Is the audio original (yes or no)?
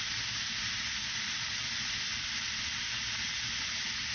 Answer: yes